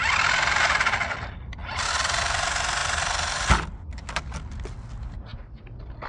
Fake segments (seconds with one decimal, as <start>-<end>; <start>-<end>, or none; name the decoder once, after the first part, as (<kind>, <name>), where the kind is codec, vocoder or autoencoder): none